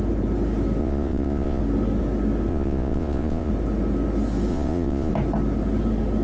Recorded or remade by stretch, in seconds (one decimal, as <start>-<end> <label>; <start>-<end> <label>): 0.0-0.8 recorded; 0.8-1.6 remade; 1.6-2.5 recorded; 2.5-3.5 remade; 3.5-4.5 recorded; 4.5-5.1 remade; 5.1-6.2 recorded